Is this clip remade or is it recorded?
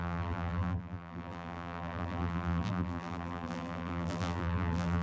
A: remade